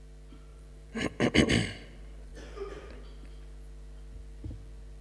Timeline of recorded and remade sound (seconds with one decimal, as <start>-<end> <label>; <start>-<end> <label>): 0.0-0.5 recorded; 0.5-1.3 remade; 1.3-2.3 recorded; 2.3-2.9 remade; 2.9-5.0 recorded